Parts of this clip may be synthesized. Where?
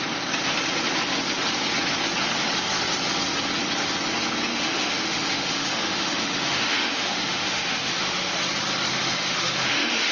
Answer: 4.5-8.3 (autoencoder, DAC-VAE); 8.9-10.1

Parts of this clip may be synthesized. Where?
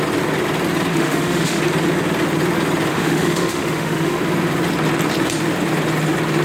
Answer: 0.9-1.6 (autoencoder, DAC-VAE); 2.9-4.2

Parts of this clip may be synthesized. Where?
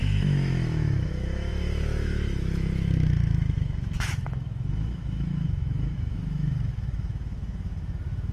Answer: 0.0-8.3 (autoencoder, DAC-VAE)